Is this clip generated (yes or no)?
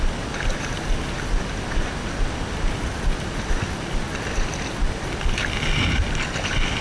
no